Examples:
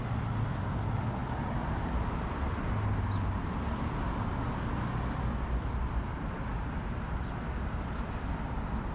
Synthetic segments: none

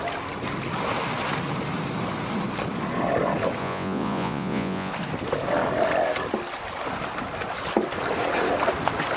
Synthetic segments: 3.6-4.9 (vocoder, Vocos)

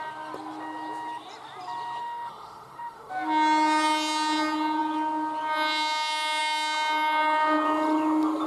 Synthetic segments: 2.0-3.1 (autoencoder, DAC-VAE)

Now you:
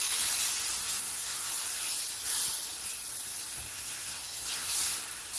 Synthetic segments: 0.8-1.5 (codec, SNAC); 3.7-5.0

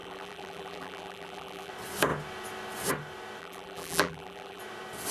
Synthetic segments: 0.0-1.7 (vocoder, BigVGAN v2); 3.4-4.6

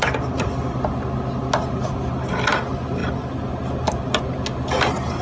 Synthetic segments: none

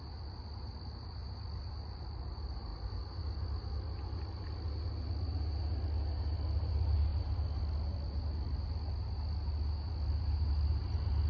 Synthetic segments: none